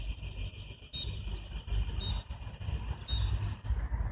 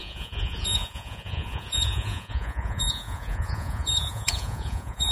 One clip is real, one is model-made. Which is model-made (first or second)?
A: second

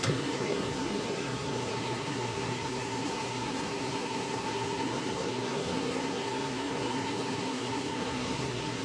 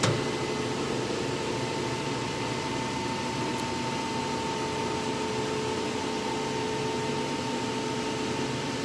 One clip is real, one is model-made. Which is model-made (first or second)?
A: first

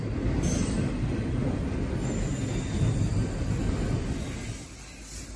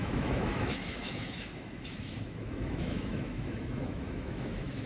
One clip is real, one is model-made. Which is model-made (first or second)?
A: second